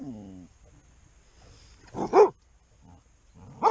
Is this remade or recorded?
recorded